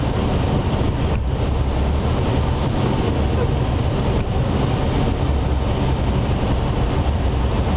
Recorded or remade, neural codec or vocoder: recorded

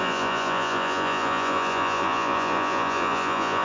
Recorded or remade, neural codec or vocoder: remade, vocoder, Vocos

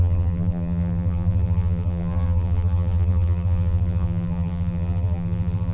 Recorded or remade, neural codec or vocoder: remade, vocoder, BigVGAN v2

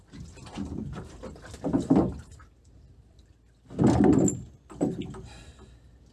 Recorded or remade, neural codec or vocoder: recorded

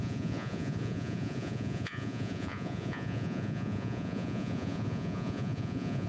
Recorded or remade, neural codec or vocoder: remade, vocoder, Vocos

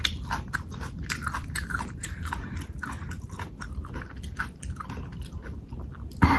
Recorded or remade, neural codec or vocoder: recorded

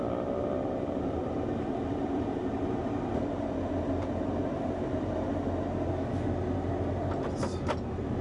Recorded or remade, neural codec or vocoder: recorded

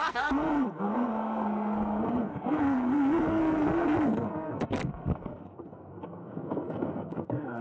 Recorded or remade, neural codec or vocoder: remade, codec, SNAC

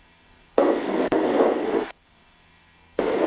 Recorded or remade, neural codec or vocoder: remade, codec, SNAC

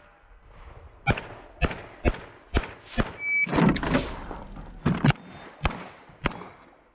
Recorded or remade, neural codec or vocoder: recorded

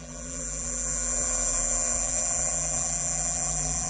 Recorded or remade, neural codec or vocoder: remade, vocoder, BigVGAN v2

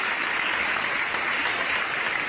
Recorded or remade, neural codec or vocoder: recorded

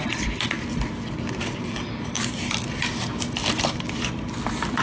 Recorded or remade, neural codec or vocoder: recorded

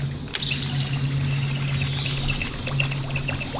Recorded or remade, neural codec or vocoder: recorded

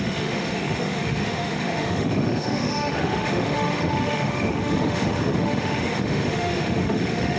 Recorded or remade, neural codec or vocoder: remade, autoencoder, DAC-VAE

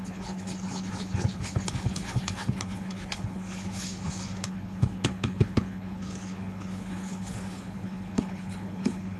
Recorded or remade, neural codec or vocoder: remade, codec, HILCodec